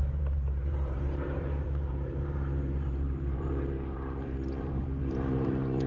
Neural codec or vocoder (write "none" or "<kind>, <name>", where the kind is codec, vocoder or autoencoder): vocoder, BigVGAN v2